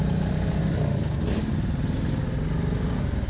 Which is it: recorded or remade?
recorded